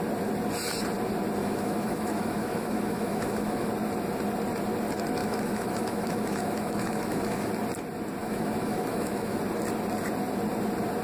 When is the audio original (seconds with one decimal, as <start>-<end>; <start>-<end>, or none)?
0.0-1.4; 3.7-5.2; 7.5-8.2; 9.4-11.0